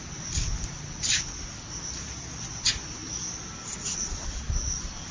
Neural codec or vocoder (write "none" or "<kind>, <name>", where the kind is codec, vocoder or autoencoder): none